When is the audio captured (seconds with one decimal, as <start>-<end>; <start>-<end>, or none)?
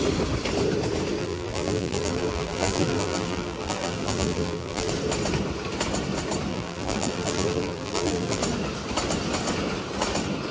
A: 0.0-1.2; 4.9-6.5; 8.4-10.5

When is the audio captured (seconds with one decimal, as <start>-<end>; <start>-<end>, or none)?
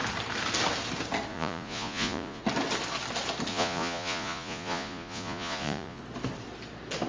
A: 0.0-1.3; 2.4-3.5; 6.0-7.1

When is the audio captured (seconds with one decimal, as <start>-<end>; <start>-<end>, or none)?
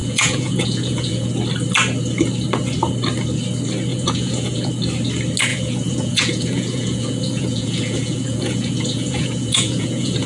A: 1.3-3.9; 4.7-5.5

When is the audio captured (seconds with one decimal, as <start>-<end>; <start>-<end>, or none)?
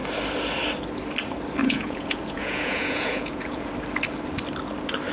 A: 0.0-1.6; 3.7-5.1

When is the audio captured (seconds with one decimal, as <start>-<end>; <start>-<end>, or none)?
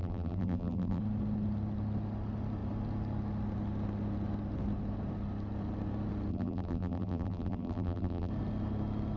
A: 1.0-6.3; 8.3-9.2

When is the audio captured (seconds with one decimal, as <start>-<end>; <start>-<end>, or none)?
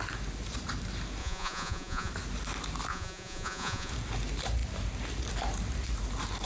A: 0.0-1.2; 2.1-2.9; 3.9-6.5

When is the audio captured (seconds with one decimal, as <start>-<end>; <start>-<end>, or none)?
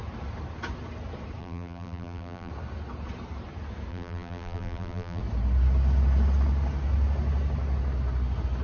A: 0.0-1.4; 2.5-3.9; 5.2-8.6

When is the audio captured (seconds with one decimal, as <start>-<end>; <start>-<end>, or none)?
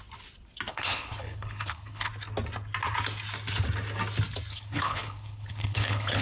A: 0.0-0.7; 2.1-4.5